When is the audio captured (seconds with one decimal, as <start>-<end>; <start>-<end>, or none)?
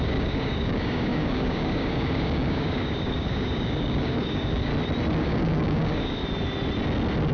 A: 4.7-5.2; 6.2-7.3